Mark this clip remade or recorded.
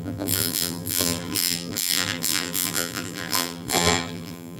remade